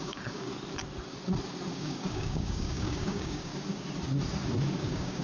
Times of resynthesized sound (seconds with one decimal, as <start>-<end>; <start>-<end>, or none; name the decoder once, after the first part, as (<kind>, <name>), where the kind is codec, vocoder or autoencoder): 0.0-0.5 (codec, DAC); 1.7-3.5; 4.7-5.2